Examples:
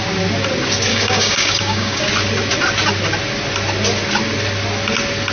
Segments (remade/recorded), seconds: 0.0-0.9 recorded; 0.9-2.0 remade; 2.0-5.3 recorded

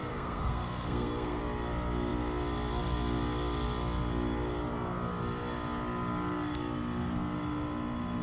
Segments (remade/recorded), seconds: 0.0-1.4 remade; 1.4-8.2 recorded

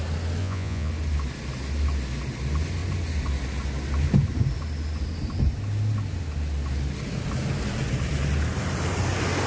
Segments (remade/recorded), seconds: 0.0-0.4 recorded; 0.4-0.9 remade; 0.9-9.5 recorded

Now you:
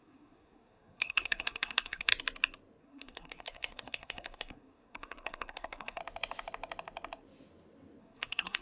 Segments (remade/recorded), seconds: 0.0-2.1 remade; 2.1-2.8 recorded; 2.8-6.0 remade; 6.0-8.0 recorded; 8.0-8.6 remade